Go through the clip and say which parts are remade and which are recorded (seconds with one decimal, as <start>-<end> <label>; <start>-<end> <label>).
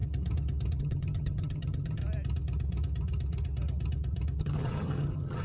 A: 0.0-0.8 recorded; 0.8-2.0 remade; 2.0-4.4 recorded; 4.4-5.4 remade